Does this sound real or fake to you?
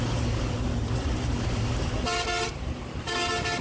real